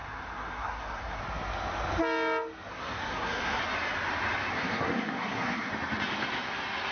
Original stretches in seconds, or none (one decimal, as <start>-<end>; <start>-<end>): 1.2-2.7; 3.6-4.5; 5.7-6.9